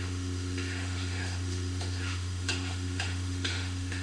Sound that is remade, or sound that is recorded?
remade